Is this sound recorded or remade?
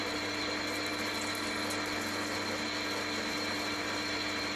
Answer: recorded